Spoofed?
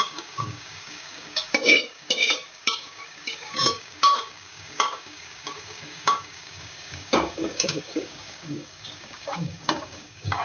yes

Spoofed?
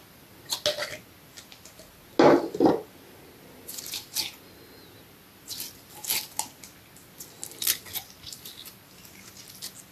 no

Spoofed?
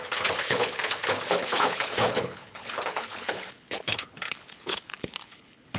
yes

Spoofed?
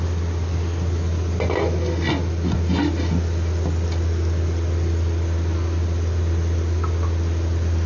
no